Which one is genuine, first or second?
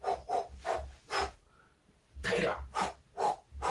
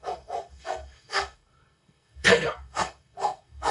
first